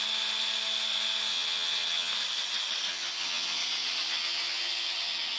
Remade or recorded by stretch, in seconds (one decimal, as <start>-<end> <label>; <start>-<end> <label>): 0.0-1.3 recorded; 1.3-2.1 remade; 2.1-2.9 recorded; 2.9-3.6 remade; 3.6-4.1 recorded; 4.1-5.4 remade